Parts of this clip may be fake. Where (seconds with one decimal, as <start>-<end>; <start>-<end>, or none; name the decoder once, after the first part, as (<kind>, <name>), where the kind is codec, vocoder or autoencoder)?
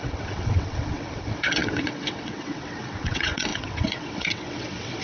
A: 0.0-5.0 (vocoder, WaveNeXt)